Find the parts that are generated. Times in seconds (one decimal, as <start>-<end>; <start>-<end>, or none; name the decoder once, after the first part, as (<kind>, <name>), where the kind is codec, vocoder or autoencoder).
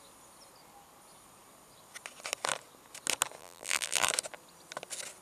3.4-4.1 (vocoder, BigVGAN v2)